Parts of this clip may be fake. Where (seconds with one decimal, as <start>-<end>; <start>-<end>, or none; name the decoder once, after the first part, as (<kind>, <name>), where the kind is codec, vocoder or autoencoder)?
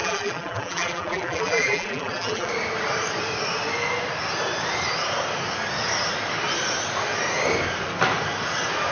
0.0-2.5 (vocoder, BigVGAN v2)